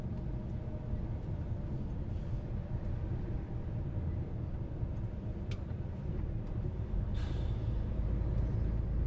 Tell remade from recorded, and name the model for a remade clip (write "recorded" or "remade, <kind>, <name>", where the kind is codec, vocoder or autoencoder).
recorded